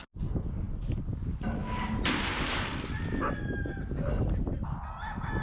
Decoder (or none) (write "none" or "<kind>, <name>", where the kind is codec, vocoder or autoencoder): none